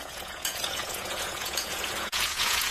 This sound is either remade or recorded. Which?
remade